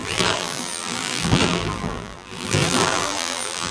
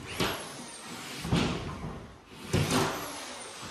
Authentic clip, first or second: second